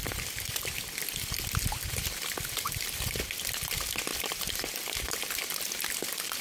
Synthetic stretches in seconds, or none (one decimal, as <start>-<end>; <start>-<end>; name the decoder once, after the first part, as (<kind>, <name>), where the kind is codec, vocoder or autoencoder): 0.0-1.0 (vocoder, BigVGAN v2); 4.1-5.1